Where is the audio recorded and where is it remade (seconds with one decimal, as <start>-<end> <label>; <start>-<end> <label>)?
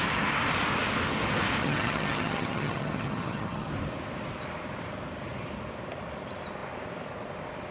0.0-1.6 recorded; 1.6-3.7 remade; 3.7-7.7 recorded